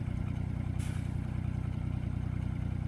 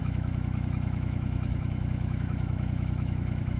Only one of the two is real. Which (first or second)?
first